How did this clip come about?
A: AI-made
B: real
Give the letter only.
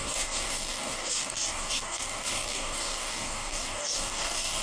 A